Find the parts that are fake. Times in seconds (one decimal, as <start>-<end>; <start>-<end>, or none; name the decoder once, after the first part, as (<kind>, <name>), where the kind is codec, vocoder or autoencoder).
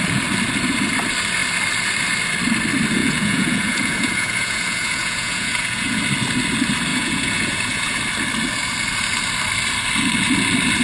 3.0-6.0 (vocoder, Vocos); 6.9-8.0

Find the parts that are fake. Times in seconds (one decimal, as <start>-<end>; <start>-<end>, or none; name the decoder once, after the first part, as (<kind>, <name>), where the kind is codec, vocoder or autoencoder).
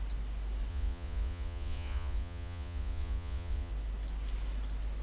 0.7-3.7 (vocoder, Vocos)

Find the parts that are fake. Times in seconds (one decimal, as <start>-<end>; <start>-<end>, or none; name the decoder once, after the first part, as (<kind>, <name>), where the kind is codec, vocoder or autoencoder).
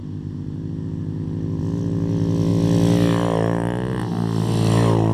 none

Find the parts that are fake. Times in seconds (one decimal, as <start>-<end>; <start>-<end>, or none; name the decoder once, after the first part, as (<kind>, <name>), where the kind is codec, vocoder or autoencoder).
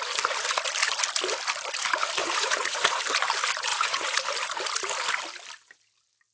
2.2-3.0 (vocoder, Vocos); 3.7-4.2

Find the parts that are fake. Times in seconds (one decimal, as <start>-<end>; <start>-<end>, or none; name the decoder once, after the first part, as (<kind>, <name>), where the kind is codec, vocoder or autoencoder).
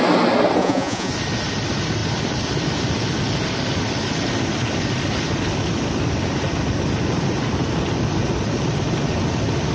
0.6-1.1 (vocoder, Vocos)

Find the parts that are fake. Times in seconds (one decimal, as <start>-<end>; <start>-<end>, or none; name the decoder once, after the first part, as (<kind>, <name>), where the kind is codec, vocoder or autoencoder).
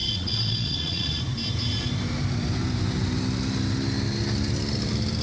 0.0-1.2 (vocoder, Vocos)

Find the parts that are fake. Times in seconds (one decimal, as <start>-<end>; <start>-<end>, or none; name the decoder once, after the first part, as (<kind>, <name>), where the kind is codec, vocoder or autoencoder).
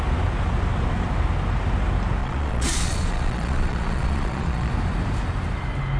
2.2-4.7 (vocoder, Vocos)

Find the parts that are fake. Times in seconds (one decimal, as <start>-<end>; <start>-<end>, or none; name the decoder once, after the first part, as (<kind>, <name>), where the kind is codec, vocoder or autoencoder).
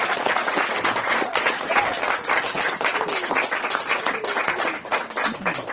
0.0-1.8 (vocoder, Vocos)